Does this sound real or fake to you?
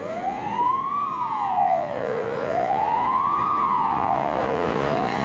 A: fake